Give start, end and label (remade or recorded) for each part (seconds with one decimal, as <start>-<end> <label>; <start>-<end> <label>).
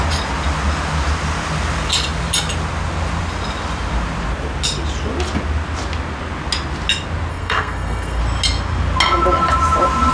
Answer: 0.0-7.3 recorded; 7.3-8.2 remade; 8.2-10.1 recorded